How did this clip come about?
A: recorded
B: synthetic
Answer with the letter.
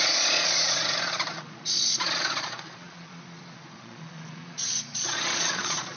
B